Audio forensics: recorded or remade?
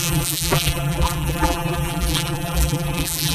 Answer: remade